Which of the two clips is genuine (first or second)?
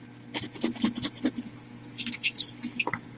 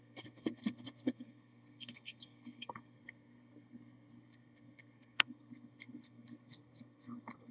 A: first